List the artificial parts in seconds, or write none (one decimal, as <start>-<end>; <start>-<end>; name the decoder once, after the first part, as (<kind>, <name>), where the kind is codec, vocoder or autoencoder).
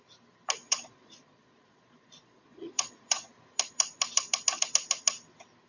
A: 0.6-3.3 (vocoder, Vocos)